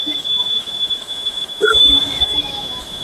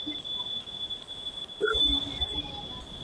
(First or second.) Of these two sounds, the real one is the second